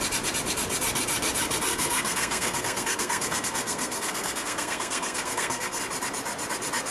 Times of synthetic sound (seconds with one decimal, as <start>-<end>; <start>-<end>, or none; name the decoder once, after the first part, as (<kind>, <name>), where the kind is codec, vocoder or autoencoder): 1.7-5.8 (codec, SNAC)